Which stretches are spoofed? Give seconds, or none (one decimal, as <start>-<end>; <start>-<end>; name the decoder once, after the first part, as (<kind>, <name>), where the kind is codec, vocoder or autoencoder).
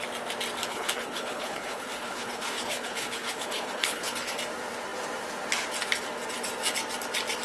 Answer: 0.7-4.4 (codec, HILCodec)